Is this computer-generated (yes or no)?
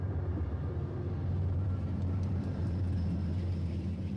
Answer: yes